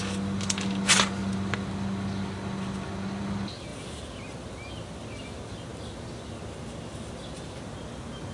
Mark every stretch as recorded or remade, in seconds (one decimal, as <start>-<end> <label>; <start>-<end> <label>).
0.0-8.3 recorded